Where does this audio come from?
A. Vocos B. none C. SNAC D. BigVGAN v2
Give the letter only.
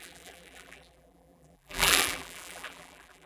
D